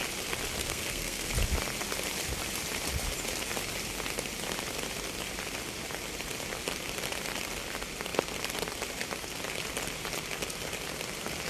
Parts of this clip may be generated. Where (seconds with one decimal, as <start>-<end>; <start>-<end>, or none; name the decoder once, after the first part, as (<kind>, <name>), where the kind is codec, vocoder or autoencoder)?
0.6-1.3 (codec, SNAC)